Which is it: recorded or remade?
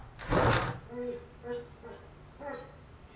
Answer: recorded